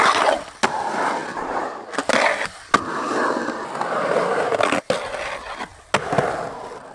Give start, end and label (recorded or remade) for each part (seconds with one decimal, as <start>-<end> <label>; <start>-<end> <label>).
0.0-6.9 recorded